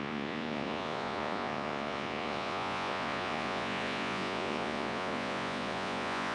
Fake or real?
fake